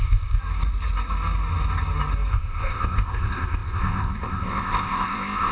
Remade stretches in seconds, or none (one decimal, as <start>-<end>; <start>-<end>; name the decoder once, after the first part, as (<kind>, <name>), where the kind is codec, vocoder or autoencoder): 0.0-0.4 (codec, ZipCodec); 2.3-5.5

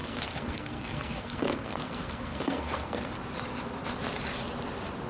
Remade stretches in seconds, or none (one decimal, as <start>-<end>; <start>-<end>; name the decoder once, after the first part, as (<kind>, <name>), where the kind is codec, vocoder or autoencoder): 0.0-3.1 (codec, SNAC)

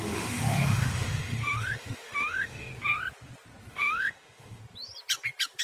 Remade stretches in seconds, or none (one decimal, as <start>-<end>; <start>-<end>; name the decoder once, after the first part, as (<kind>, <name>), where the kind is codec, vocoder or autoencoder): 0.0-2.7 (autoencoder, DAC-VAE); 3.7-4.6

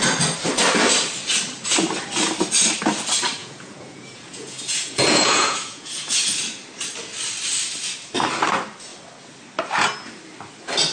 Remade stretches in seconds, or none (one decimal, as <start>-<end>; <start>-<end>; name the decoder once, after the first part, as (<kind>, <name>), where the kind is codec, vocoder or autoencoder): 3.4-6.3 (vocoder, Vocos)

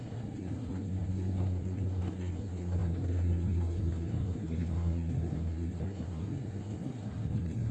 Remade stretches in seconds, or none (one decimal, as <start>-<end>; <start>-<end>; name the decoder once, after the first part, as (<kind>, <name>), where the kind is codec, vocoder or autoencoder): 0.0-7.7 (codec, SNAC)

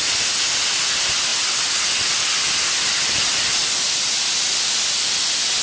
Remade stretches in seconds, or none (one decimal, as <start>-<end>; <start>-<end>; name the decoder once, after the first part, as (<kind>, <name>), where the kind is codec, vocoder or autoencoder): none

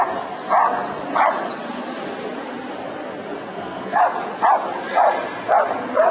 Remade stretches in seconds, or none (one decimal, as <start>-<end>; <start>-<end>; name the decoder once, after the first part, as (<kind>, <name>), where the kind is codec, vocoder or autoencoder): 3.5-4.0 (codec, SNAC)